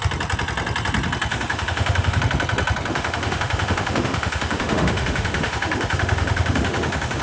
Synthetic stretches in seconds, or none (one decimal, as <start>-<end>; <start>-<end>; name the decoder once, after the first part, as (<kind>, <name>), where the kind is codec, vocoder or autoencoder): 1.3-2.2 (autoencoder, DAC-VAE); 2.9-7.2